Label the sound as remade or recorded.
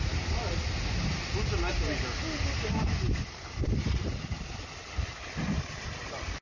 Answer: recorded